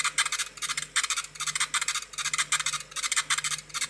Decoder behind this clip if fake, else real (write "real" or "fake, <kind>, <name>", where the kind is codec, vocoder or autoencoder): real